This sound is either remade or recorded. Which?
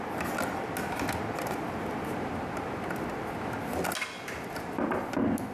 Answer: recorded